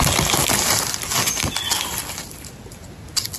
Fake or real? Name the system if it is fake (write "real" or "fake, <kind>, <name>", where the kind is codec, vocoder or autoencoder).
real